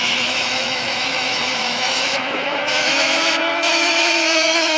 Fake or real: fake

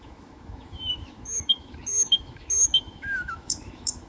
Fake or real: fake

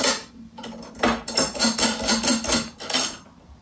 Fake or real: real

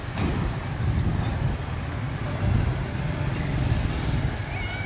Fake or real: real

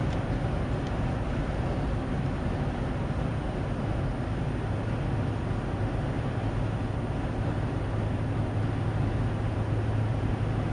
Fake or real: real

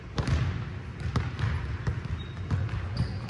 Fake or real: real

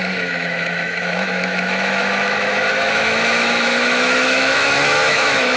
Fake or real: fake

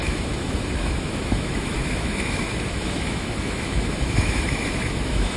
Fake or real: fake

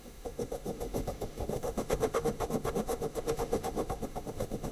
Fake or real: fake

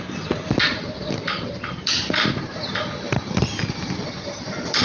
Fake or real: real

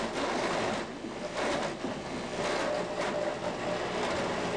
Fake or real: real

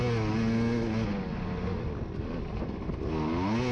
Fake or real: real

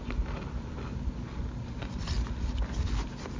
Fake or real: real